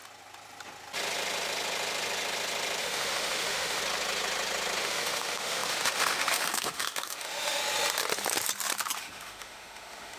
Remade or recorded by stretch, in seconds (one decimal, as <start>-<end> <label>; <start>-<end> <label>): 0.0-2.8 recorded; 2.8-3.8 remade; 3.8-4.8 recorded; 4.8-7.6 remade; 7.6-9.0 recorded; 9.0-10.2 remade